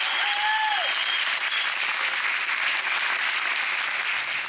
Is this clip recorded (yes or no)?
yes